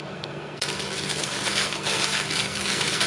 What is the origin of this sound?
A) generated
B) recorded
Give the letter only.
A